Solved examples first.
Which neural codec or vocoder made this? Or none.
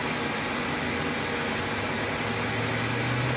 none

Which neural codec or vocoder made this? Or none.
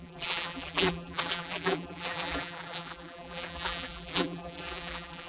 vocoder, BigVGAN v2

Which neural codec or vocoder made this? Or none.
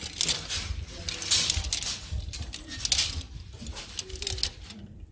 none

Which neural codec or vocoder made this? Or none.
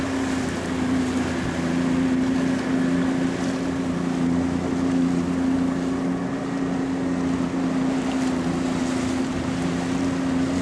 none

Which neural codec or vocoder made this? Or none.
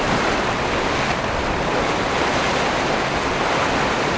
none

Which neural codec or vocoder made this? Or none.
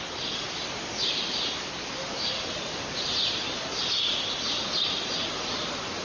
none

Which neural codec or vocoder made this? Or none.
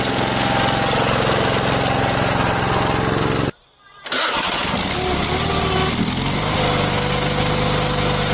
none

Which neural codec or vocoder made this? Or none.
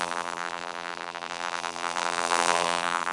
vocoder, BigVGAN v2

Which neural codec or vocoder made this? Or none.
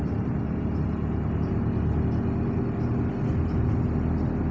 none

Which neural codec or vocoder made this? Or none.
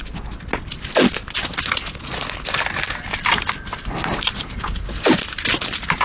none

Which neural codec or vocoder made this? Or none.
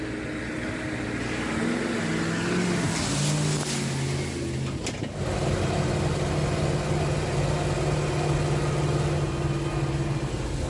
none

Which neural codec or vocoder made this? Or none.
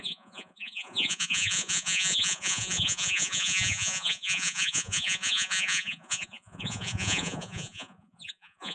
vocoder, Vocos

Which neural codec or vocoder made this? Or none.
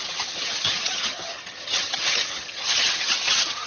vocoder, HiFi-GAN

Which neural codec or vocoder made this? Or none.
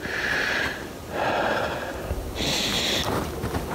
none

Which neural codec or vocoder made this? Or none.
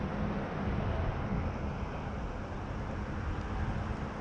none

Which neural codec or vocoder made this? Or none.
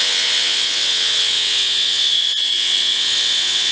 vocoder, WaveNeXt